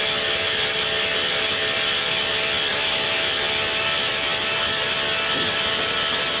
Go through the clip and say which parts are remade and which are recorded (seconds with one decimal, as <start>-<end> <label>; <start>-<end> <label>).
0.0-2.7 recorded; 2.7-3.3 remade; 3.3-6.4 recorded